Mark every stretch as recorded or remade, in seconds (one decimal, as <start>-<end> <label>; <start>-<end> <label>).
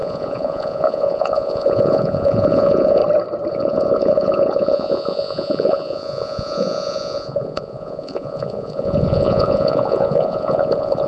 0.0-3.0 remade; 3.0-3.5 recorded; 3.5-11.1 remade